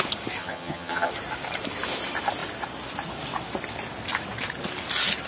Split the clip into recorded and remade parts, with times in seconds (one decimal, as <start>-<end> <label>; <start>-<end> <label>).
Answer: 0.0-0.4 recorded; 0.4-1.1 remade; 1.1-5.3 recorded